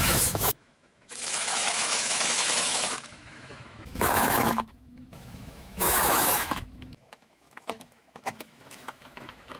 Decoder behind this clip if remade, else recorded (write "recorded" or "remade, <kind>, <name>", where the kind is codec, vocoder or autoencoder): remade, autoencoder, DAC-VAE